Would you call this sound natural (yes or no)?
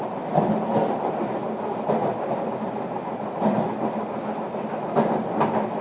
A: yes